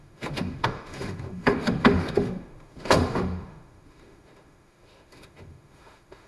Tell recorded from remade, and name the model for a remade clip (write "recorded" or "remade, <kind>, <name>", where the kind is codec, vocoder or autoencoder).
remade, autoencoder, DAC-VAE